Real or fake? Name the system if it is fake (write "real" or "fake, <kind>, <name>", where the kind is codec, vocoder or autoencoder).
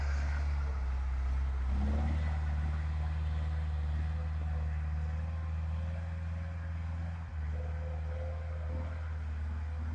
real